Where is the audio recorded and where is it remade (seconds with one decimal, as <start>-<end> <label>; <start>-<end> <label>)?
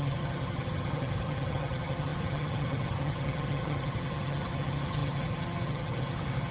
0.0-6.5 remade